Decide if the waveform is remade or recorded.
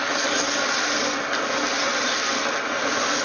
recorded